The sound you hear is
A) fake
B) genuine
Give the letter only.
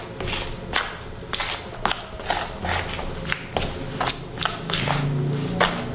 B